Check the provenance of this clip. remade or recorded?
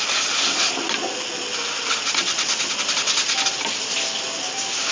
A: recorded